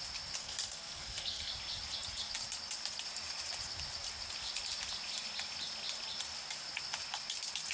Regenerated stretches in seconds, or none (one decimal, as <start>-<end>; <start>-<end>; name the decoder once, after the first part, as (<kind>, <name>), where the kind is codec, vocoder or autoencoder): 0.4-1.5 (codec, SNAC)